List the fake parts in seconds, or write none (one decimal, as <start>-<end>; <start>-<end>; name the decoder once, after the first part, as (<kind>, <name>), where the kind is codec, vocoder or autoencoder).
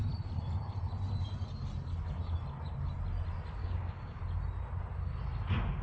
3.6-4.2 (codec, DAC)